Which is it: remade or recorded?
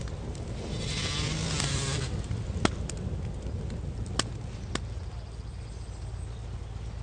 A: recorded